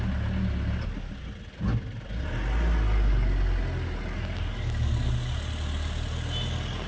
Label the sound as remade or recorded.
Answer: recorded